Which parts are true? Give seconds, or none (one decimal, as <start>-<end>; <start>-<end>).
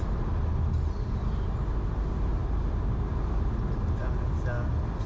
0.0-5.1